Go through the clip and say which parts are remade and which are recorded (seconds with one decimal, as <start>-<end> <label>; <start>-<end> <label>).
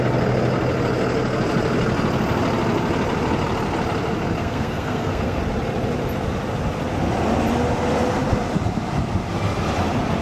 0.0-4.4 recorded; 4.4-5.4 remade; 5.4-10.2 recorded